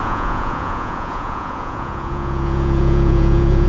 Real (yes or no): no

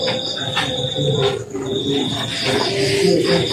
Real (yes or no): yes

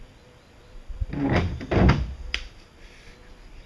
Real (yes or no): yes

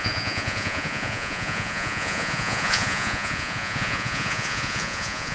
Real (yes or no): no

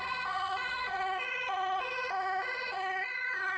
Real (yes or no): no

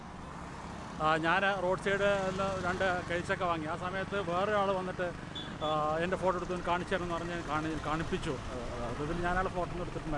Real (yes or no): yes